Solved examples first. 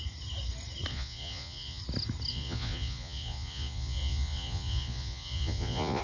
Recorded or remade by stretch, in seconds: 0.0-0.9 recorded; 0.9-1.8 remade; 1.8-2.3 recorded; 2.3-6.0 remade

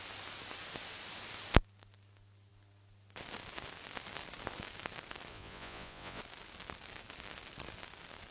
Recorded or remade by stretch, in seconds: 0.0-5.3 recorded; 5.3-6.2 remade; 6.2-8.3 recorded

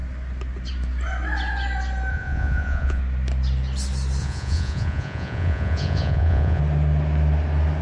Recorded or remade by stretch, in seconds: 0.0-2.1 recorded; 2.1-3.0 remade; 3.0-4.2 recorded; 4.2-6.6 remade; 6.6-7.8 recorded